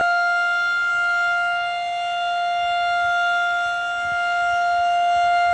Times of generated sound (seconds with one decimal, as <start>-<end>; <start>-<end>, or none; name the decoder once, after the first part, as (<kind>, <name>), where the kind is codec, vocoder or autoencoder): none